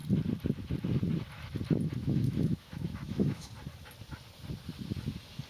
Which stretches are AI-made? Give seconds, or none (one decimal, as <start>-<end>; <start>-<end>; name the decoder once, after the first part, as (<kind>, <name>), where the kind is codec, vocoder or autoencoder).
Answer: 2.0-3.5 (autoencoder, DAC-VAE)

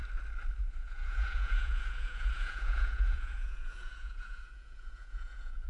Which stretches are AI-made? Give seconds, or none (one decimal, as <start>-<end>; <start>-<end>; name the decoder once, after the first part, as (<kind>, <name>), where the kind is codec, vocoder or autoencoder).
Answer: 0.6-5.7 (vocoder, Vocos)

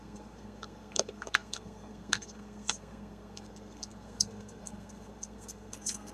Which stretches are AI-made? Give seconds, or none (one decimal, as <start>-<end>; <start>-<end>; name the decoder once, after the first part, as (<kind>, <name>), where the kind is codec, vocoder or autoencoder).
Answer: 0.0-6.1 (codec, SNAC)